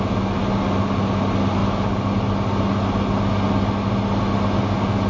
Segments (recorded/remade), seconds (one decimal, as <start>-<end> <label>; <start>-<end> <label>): 0.0-5.1 recorded